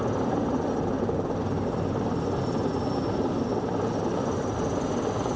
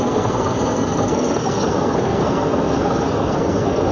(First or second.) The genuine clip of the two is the first